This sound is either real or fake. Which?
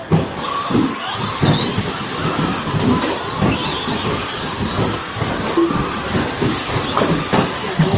real